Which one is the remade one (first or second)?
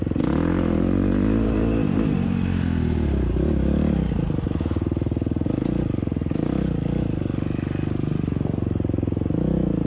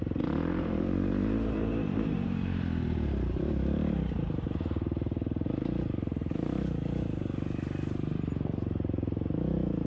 second